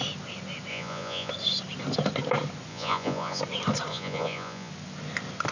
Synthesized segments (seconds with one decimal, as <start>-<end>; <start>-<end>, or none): 0.7-1.3; 2.7-3.4; 3.9-4.7